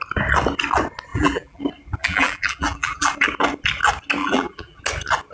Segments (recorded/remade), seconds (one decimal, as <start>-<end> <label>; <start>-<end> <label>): 0.0-1.1 recorded; 1.1-1.6 remade; 1.6-2.0 recorded; 2.0-3.1 remade; 3.1-4.2 recorded; 4.2-4.8 remade; 4.8-5.3 recorded